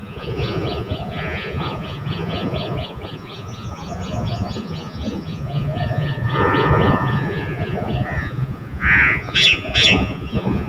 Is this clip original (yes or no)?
no